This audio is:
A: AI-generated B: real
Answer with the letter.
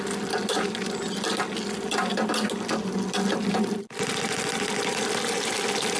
B